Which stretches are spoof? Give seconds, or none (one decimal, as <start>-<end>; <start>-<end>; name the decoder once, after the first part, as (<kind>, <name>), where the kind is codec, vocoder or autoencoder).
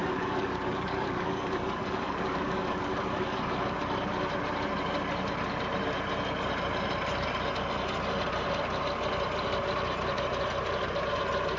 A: 0.0-3.8 (codec, DAC)